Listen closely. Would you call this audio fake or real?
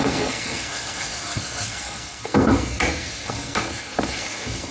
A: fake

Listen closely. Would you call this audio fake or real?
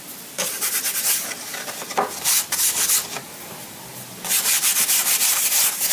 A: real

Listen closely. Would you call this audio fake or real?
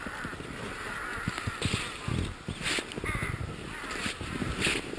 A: real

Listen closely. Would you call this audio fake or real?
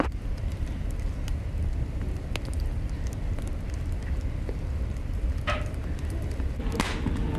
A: real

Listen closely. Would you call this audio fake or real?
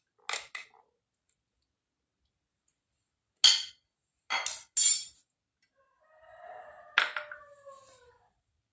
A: real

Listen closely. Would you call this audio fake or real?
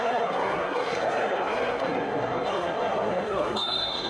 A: fake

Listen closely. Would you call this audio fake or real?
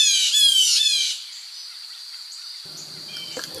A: real